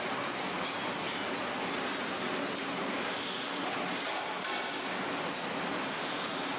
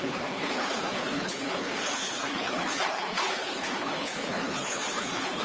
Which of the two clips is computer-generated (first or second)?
second